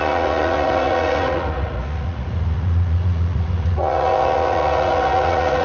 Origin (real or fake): fake